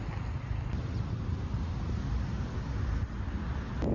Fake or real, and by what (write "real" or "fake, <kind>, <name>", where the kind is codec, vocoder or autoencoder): real